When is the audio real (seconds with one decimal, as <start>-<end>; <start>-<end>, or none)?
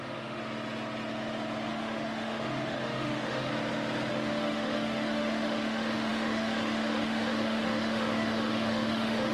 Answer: 0.4-1.7; 3.5-4.1